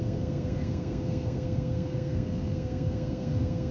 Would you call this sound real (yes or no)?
no